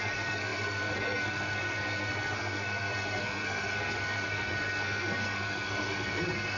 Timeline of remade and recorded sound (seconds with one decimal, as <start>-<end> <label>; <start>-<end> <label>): 0.0-6.6 remade